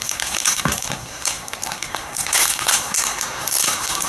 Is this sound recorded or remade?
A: remade